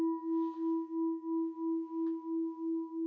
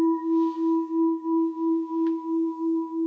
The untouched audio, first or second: first